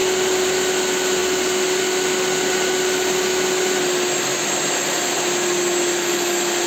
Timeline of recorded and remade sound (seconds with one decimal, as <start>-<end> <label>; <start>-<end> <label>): 0.0-0.7 remade; 0.7-4.3 recorded; 4.3-5.1 remade; 5.1-6.7 recorded